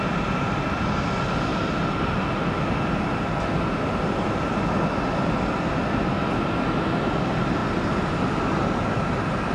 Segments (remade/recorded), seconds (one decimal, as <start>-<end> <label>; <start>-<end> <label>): 0.0-9.5 recorded